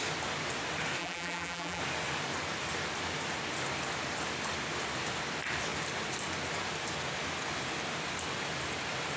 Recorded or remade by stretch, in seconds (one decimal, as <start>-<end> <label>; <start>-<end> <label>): 0.0-1.0 recorded; 1.0-1.8 remade; 1.8-9.2 recorded